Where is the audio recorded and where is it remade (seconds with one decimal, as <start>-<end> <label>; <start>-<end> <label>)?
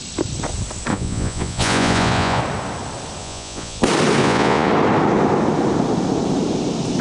0.0-0.9 recorded; 0.9-2.4 remade; 2.4-3.2 recorded; 3.2-3.8 remade; 3.8-4.2 recorded; 4.2-4.7 remade; 4.7-7.0 recorded